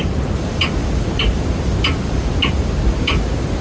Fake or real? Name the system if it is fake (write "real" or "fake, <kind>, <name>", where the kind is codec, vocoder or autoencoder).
real